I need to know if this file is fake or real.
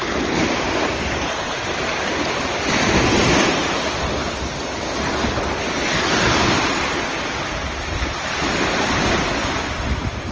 real